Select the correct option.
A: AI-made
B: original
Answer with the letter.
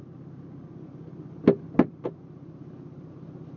B